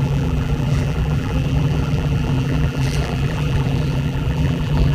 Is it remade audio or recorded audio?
remade